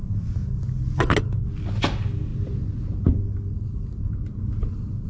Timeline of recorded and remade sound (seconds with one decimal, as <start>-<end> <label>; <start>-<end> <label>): 0.0-5.1 recorded

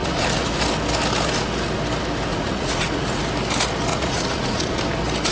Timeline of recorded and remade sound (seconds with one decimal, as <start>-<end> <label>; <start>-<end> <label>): 0.0-0.6 remade; 0.6-2.3 recorded; 2.3-3.2 remade; 3.2-3.9 recorded; 3.9-4.8 remade; 4.8-5.3 recorded

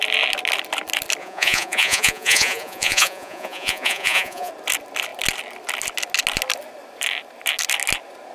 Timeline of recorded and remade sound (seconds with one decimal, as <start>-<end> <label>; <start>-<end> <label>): 0.0-1.2 recorded; 1.2-4.5 remade; 4.5-8.3 recorded

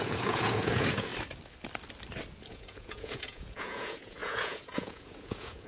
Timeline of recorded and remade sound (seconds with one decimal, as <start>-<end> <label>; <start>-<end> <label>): 0.0-1.1 remade; 1.1-2.5 recorded; 2.5-5.7 remade

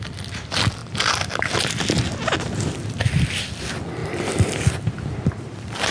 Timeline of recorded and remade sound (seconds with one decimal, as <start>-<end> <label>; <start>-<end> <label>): 0.0-5.9 recorded

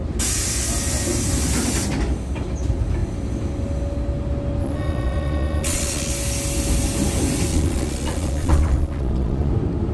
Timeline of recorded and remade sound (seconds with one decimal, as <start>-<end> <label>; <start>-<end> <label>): 0.0-4.6 recorded; 4.6-6.1 remade; 6.1-7.5 recorded; 7.5-9.5 remade; 9.5-9.9 recorded